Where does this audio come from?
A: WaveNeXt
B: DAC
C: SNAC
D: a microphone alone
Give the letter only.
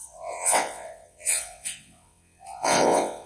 A